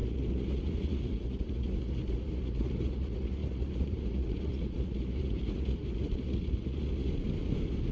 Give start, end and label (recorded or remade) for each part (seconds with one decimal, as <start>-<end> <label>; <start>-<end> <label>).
0.0-7.1 remade; 7.1-7.9 recorded